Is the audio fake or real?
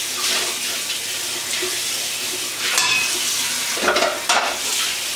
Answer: real